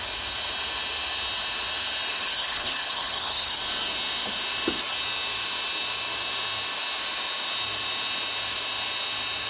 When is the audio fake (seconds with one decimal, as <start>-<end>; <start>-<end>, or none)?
2.1-3.6